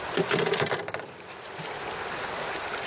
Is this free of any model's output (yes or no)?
yes